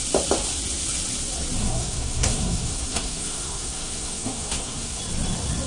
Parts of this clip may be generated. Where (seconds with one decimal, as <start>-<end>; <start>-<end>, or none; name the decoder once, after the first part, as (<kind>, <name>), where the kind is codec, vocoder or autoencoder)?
1.6-5.0 (codec, SNAC)